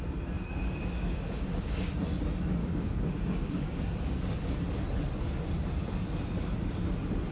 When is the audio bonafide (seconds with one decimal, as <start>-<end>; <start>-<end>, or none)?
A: 0.0-0.5; 1.9-2.6; 4.4-7.3